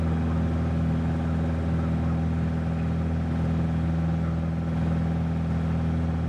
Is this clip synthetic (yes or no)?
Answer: no